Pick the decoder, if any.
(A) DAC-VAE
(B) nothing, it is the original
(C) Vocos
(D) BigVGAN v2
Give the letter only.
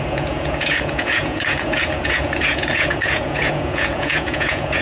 C